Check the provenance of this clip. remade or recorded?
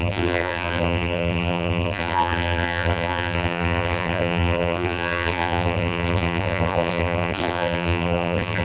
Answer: remade